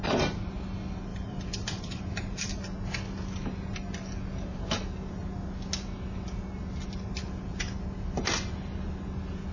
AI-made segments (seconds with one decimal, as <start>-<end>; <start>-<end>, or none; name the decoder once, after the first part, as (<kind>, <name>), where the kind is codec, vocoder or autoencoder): 1.1-2.5 (vocoder, BigVGAN v2)